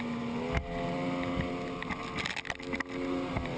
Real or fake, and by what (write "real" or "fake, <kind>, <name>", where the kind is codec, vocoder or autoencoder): real